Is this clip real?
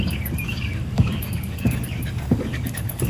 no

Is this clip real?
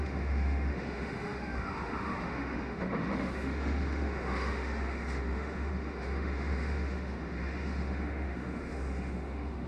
no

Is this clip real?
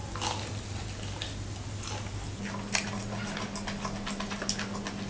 yes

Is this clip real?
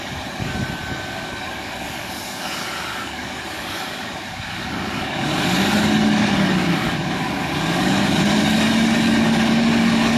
no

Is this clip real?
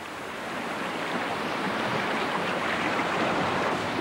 no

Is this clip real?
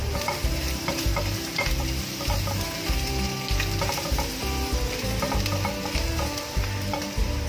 no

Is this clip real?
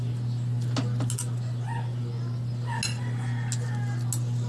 yes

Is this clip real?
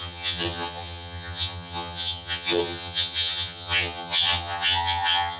no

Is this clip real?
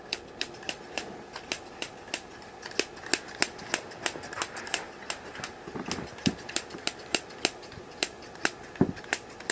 yes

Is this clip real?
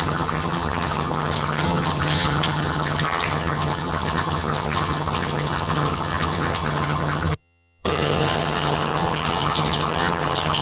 no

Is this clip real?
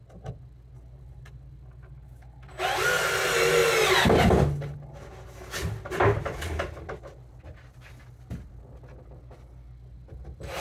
yes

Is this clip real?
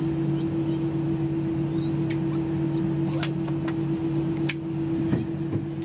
yes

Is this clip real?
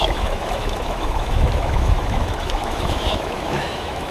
no